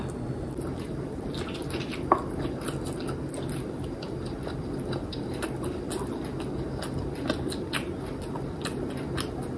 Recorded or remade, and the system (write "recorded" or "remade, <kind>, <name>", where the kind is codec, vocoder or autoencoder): recorded